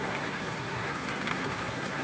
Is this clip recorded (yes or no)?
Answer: no